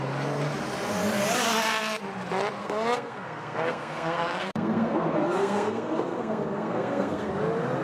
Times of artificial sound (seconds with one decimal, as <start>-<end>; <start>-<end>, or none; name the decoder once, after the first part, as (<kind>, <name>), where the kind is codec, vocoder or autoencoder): 2.6-7.3 (codec, SNAC)